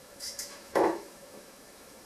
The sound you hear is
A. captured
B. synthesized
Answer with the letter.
B